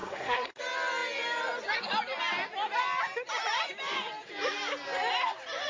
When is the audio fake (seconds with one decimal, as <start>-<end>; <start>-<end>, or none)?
0.0-0.6